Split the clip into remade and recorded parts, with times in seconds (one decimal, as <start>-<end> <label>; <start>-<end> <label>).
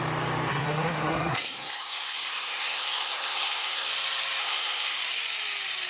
0.0-0.5 recorded; 0.5-3.9 remade; 3.9-4.4 recorded; 4.4-5.0 remade; 5.0-5.9 recorded